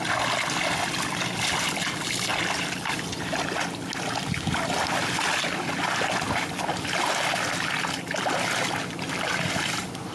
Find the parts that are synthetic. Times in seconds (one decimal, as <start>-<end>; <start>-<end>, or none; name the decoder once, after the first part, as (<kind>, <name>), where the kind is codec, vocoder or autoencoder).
none